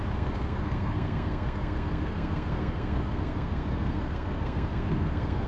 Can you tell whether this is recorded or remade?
remade